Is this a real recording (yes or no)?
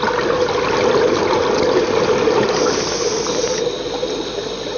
yes